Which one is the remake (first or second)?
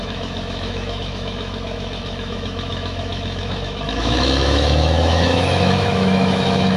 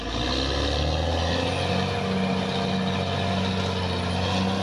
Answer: first